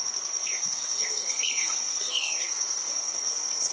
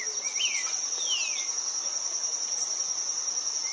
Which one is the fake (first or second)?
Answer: first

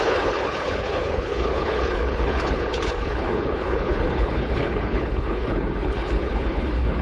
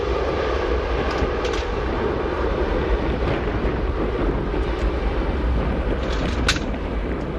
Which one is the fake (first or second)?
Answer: first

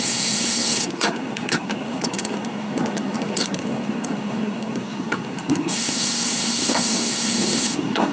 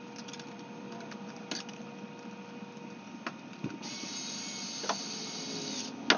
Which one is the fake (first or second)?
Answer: first